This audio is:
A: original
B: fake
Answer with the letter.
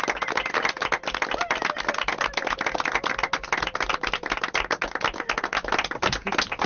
A